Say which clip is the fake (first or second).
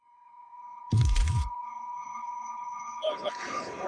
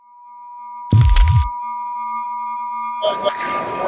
first